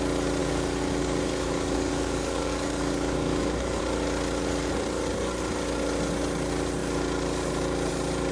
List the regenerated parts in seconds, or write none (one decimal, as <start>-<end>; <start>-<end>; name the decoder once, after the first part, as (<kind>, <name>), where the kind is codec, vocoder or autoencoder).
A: 0.4-3.8 (codec, DAC)